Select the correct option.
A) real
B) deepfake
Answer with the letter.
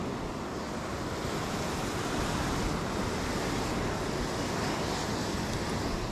A